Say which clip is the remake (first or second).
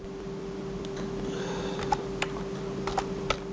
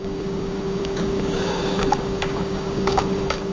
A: second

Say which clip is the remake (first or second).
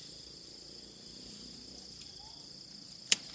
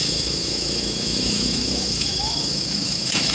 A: second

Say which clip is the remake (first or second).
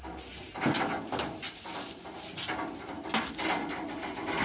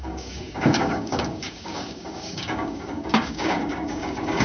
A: second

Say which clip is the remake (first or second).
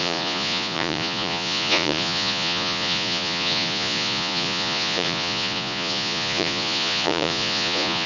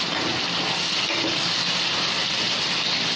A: first